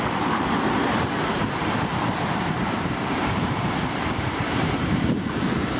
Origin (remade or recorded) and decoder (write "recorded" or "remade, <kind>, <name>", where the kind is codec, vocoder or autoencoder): remade, vocoder, BigVGAN v2